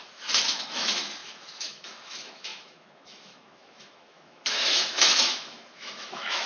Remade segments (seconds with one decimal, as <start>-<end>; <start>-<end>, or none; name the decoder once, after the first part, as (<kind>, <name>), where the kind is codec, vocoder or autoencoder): 0.0-6.5 (autoencoder, DAC-VAE)